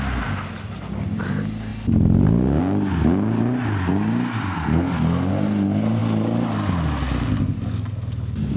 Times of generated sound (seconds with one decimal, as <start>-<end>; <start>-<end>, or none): none